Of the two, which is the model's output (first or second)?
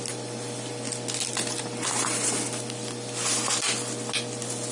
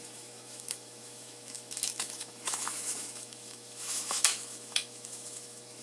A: second